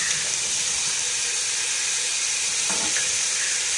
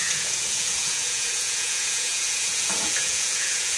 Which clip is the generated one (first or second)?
second